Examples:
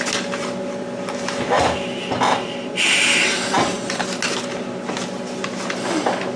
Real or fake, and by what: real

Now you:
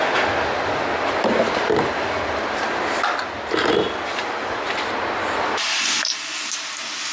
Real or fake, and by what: real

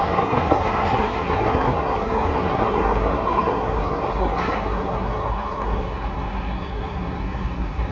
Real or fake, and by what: fake, codec, SNAC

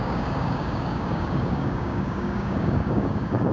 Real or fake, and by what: fake, codec, DAC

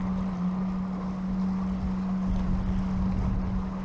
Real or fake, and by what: real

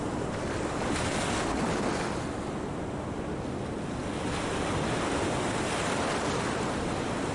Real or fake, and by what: real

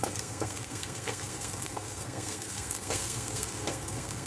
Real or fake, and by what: fake, codec, SNAC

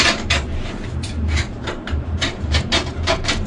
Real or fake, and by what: fake, vocoder, BigVGAN v2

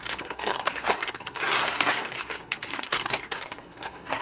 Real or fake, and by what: fake, codec, SNAC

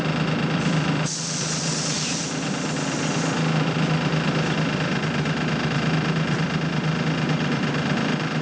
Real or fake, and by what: fake, vocoder, BigVGAN v2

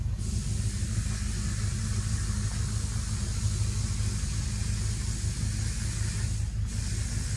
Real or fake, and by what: real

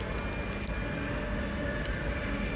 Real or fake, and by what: real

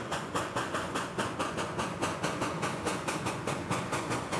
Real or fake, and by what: fake, vocoder, Vocos